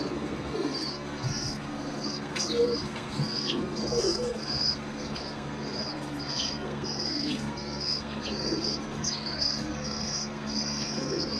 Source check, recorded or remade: remade